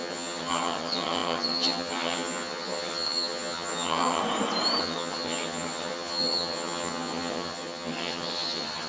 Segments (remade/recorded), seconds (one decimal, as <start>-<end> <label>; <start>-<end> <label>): 0.0-4.2 remade; 4.2-4.8 recorded; 4.8-8.9 remade